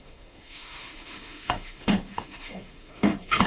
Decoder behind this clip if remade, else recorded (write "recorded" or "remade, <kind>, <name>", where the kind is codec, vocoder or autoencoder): remade, autoencoder, DAC-VAE